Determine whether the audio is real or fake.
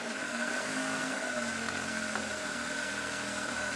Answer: fake